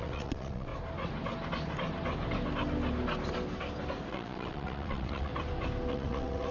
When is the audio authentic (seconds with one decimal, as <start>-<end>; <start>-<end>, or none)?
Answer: 0.7-4.1; 5.3-5.9